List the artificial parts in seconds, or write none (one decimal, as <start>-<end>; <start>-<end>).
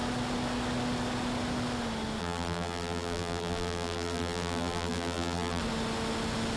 2.2-5.6